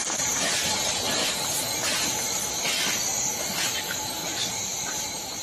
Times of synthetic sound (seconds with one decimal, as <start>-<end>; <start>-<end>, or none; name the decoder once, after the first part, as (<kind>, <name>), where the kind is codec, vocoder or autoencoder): 0.0-1.2 (vocoder, BigVGAN v2); 3.4-5.4